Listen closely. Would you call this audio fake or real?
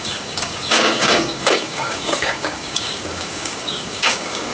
fake